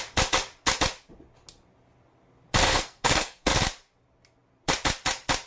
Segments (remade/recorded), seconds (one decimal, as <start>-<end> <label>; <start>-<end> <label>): 0.0-2.6 recorded; 2.6-3.5 remade; 3.5-5.5 recorded